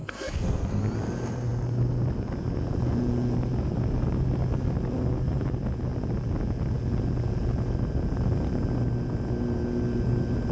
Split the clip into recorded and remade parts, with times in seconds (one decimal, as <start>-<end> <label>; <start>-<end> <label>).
0.0-0.8 remade; 0.8-10.5 recorded